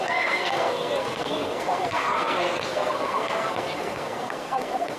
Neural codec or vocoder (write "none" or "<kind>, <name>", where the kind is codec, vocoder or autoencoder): codec, SNAC